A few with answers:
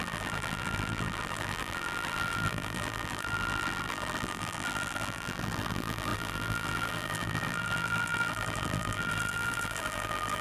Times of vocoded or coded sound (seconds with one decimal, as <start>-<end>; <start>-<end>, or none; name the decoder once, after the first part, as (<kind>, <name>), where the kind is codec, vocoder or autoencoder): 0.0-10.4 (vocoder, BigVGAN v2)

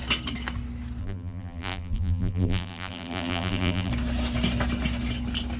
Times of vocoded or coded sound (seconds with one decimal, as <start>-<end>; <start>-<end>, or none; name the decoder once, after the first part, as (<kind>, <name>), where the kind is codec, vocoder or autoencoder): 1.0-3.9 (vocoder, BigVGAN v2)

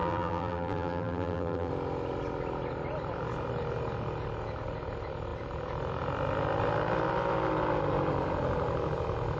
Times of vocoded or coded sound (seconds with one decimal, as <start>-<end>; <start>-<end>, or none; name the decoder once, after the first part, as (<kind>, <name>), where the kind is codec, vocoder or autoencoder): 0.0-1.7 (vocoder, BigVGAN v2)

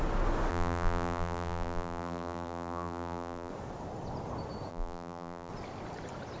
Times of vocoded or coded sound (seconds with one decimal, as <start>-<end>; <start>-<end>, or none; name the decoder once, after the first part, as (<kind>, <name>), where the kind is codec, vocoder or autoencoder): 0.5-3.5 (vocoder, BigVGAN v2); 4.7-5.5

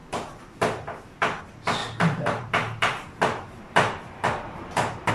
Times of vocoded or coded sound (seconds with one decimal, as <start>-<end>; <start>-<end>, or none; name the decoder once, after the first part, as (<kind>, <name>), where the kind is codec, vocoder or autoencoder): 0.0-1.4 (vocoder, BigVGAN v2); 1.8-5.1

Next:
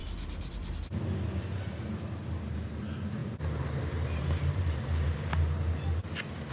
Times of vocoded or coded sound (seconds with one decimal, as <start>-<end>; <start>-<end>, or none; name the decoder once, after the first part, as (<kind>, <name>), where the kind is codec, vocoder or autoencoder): 2.4-5.3 (vocoder, BigVGAN v2); 6.0-6.5